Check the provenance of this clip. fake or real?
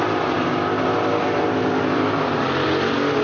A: real